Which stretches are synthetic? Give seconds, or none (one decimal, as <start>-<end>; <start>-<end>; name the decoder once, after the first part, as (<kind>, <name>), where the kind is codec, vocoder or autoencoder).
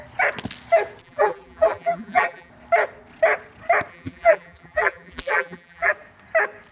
1.0-2.5 (vocoder, BigVGAN v2); 3.9-5.9